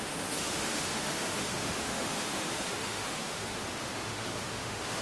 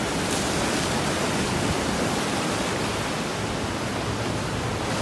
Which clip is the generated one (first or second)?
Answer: first